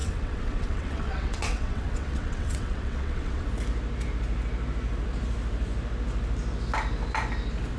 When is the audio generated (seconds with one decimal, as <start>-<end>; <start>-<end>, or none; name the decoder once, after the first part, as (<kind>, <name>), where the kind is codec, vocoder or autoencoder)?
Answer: 0.0-3.5 (vocoder, WaveNeXt)